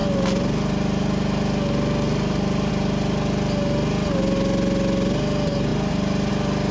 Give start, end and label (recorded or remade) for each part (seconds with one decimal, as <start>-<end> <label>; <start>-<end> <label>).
0.0-6.7 recorded